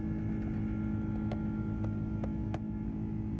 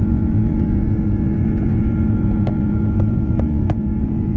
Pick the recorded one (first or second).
first